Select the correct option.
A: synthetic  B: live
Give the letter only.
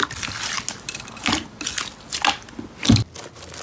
B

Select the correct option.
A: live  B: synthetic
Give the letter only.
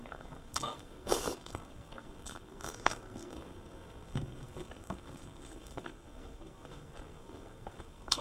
B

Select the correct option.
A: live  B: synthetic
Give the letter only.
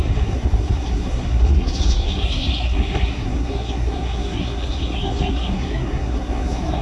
B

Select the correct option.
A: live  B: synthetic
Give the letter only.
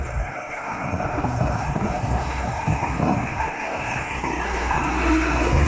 B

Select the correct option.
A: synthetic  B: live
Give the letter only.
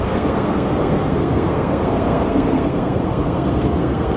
A